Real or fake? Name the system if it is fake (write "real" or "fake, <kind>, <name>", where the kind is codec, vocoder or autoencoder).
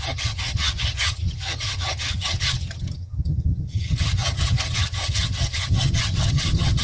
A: fake, vocoder, HiFi-GAN